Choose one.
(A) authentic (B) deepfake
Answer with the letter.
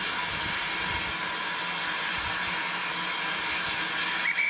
A